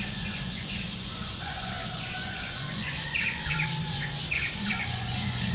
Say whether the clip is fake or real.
fake